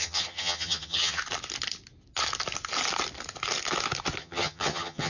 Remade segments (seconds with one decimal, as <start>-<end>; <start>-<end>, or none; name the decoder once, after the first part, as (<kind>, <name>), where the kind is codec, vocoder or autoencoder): 0.0-1.2 (vocoder, HiFi-GAN); 4.2-5.1